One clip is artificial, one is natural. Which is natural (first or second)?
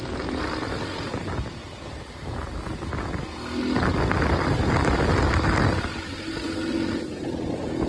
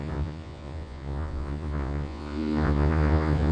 first